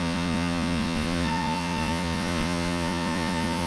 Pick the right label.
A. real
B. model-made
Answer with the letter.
B